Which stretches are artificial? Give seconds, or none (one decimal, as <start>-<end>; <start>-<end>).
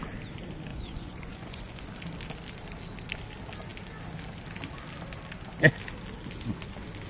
0.7-1.9